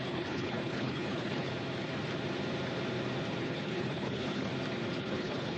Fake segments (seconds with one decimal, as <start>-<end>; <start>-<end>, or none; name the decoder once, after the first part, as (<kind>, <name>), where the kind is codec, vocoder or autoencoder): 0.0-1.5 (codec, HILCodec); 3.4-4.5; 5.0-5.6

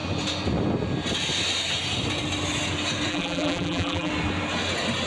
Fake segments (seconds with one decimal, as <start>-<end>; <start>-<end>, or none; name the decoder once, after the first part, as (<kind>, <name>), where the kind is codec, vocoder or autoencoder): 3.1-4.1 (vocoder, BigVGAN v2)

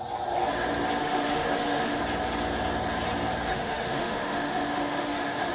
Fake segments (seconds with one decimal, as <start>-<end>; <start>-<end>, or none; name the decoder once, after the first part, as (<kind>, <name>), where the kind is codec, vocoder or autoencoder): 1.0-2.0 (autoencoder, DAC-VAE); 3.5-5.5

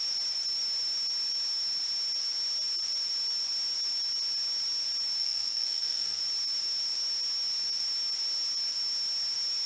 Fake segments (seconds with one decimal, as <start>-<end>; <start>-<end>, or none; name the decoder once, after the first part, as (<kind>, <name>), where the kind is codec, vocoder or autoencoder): 5.2-6.2 (codec, SNAC)

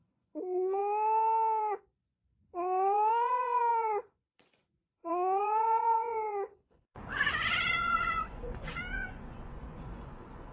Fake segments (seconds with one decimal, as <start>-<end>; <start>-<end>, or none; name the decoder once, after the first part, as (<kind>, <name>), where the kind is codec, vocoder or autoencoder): 0.0-0.8 (vocoder, Vocos); 1.6-10.5

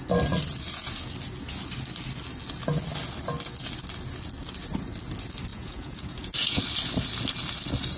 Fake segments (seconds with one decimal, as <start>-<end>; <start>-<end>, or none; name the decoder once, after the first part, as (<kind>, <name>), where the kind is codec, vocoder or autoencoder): 5.5-6.6 (vocoder, Vocos)

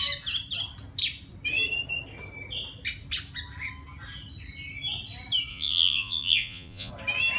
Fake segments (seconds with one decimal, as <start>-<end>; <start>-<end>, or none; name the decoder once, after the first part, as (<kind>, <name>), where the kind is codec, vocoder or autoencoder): 5.5-6.9 (vocoder, Vocos)